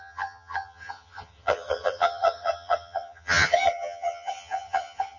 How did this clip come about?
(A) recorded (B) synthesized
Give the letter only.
B